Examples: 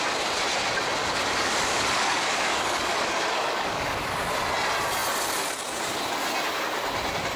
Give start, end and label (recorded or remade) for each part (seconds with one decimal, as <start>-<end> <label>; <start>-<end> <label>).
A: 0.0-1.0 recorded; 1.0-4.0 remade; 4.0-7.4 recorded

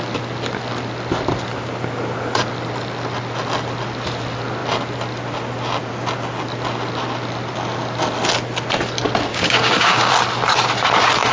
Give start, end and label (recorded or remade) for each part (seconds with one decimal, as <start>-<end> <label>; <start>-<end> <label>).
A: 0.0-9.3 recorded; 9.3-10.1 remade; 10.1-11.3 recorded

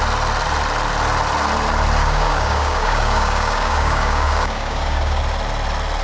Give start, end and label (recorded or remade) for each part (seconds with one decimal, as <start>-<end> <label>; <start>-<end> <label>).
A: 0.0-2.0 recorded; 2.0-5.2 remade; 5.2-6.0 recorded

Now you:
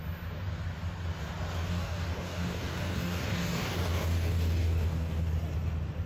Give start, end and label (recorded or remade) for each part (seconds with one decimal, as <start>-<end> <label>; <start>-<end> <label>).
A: 0.0-1.6 recorded; 1.6-5.3 remade; 5.3-6.1 recorded

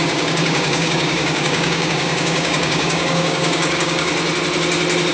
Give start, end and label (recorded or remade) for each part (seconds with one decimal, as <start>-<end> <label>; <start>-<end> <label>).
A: 0.0-4.1 remade; 4.1-5.1 recorded

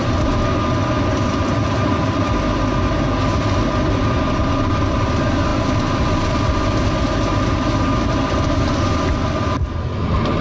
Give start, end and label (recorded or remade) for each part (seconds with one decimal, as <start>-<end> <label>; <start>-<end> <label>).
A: 0.0-10.4 recorded

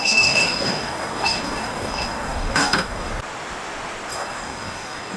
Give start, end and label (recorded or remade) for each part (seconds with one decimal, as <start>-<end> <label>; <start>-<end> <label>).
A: 0.0-3.1 remade; 3.1-4.1 recorded; 4.1-5.2 remade